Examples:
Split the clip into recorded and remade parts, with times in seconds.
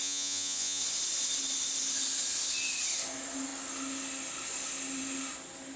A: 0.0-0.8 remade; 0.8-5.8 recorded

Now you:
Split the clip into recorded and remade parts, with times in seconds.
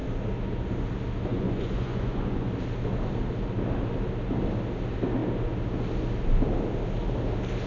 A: 0.0-1.3 recorded; 1.3-2.5 remade; 2.5-7.7 recorded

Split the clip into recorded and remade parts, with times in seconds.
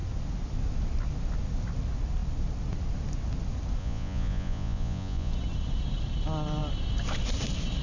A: 0.0-3.8 recorded; 3.8-5.3 remade; 5.3-7.8 recorded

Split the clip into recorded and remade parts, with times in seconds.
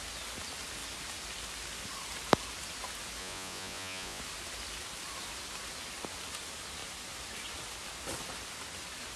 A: 0.0-3.2 recorded; 3.2-4.2 remade; 4.2-9.2 recorded